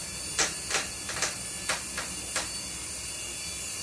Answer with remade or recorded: recorded